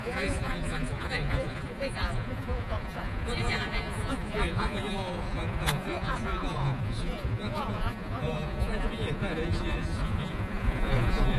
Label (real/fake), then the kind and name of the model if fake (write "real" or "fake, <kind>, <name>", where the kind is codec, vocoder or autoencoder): fake, vocoder, Vocos